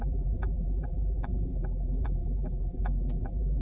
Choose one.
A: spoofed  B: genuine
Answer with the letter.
A